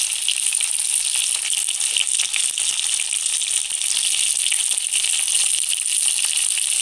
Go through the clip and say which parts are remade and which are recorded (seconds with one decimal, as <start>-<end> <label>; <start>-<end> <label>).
0.0-6.8 recorded